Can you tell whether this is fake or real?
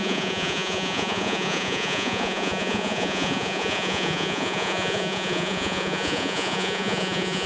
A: fake